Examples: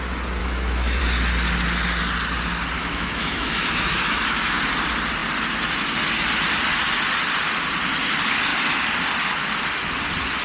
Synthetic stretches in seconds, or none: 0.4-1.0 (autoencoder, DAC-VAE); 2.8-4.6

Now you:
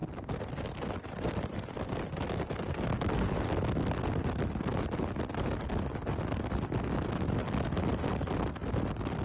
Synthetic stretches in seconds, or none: none

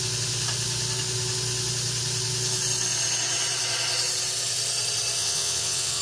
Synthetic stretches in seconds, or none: 5.2-6.0 (vocoder, WaveNeXt)

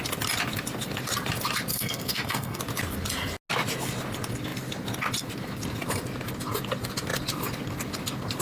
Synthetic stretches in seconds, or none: 1.7-2.6 (codec, SNAC)

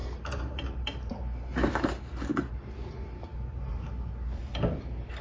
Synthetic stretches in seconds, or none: 0.0-1.1 (vocoder, BigVGAN v2); 2.3-2.9; 3.3-4.4

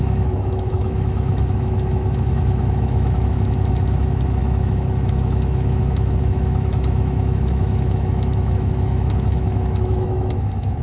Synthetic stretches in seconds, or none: 0.0-10.8 (autoencoder, DAC-VAE)